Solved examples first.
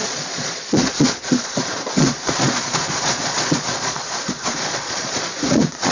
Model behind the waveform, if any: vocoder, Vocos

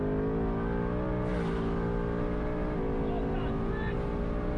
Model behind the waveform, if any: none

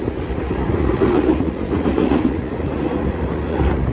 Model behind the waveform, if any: vocoder, Vocos